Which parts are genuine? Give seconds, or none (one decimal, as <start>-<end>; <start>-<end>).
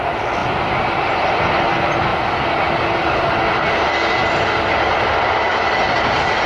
0.0-6.5